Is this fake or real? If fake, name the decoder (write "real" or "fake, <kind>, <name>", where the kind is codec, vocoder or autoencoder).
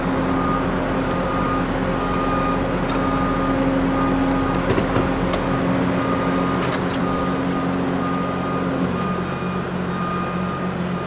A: real